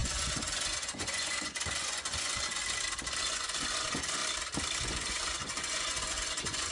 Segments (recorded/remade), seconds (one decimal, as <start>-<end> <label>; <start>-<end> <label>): 0.0-2.6 remade; 2.6-3.2 recorded; 3.2-4.2 remade; 4.2-4.8 recorded; 4.8-6.7 remade